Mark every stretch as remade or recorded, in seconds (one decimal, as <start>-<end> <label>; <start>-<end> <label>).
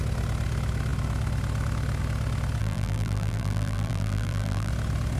0.0-2.6 recorded; 2.6-4.7 remade; 4.7-5.2 recorded